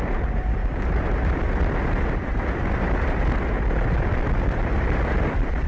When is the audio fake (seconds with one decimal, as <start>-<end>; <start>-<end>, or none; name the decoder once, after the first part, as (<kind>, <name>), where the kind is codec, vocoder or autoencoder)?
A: none